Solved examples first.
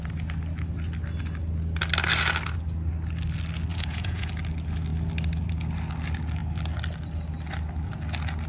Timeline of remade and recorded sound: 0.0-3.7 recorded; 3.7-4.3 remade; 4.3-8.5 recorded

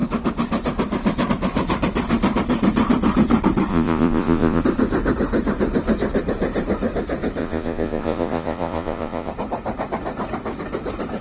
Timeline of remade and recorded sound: 0.0-3.7 recorded; 3.7-4.6 remade; 4.6-7.4 recorded; 7.4-9.3 remade; 9.3-11.2 recorded

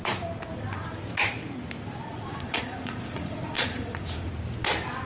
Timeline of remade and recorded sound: 0.0-2.1 recorded; 2.1-4.3 remade; 4.3-5.1 recorded